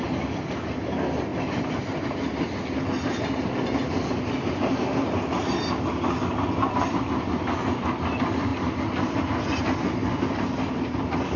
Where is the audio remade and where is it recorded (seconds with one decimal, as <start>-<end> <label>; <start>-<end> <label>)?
0.0-1.3 recorded; 1.3-2.0 remade; 2.0-8.5 recorded; 8.5-9.3 remade; 9.3-11.4 recorded